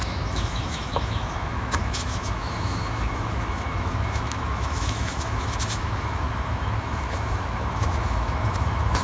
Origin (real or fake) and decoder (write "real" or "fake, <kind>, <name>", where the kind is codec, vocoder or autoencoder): fake, autoencoder, DAC-VAE